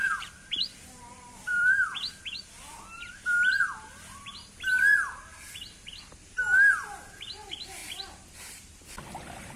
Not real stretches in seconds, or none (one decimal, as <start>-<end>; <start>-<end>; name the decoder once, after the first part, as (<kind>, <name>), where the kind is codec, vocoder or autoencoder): 1.5-2.2 (vocoder, BigVGAN v2); 7.8-8.9